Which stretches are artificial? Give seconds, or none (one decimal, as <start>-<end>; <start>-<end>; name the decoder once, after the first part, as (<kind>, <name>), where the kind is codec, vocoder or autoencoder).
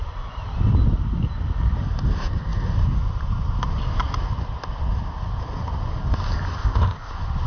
6.6-7.1 (codec, ZipCodec)